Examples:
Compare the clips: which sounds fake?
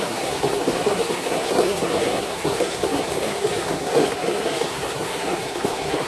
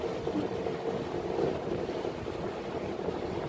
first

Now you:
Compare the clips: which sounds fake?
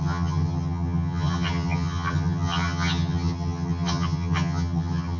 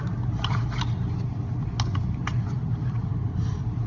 first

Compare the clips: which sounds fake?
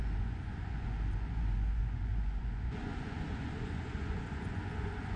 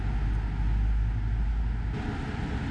first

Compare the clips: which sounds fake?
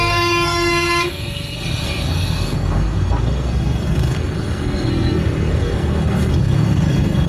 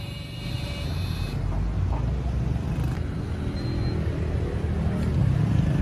first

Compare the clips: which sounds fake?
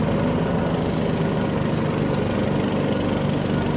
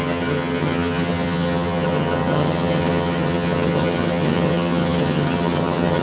second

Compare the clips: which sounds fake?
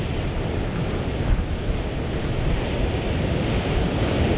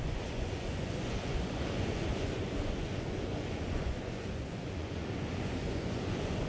second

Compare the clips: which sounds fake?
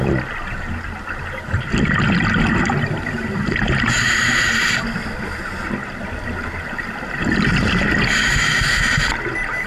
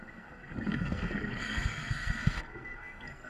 second